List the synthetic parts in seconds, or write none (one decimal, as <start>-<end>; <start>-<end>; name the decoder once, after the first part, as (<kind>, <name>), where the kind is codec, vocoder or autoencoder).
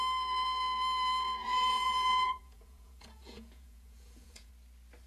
1.4-4.5 (vocoder, Vocos)